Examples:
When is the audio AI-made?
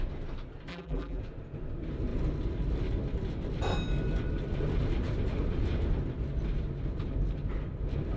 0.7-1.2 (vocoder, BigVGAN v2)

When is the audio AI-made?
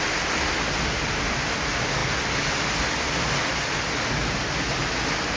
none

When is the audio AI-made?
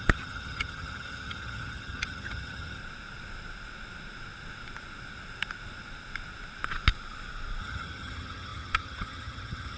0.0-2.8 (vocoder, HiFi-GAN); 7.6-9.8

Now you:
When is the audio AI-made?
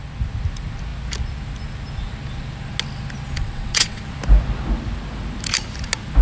3.4-4.0 (vocoder, WaveNeXt)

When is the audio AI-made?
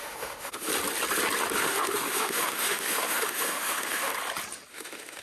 0.0-0.7 (autoencoder, DAC-VAE); 1.6-4.1; 4.7-5.2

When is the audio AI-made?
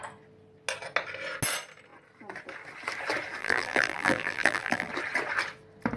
3.4-4.9 (vocoder, BigVGAN v2)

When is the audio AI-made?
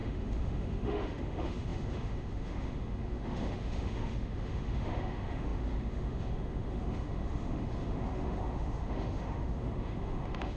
0.0-10.6 (autoencoder, DAC-VAE)